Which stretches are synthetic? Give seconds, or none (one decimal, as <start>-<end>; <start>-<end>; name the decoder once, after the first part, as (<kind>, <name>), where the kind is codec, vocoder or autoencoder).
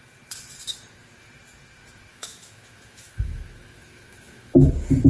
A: 2.1-4.6 (autoencoder, DAC-VAE)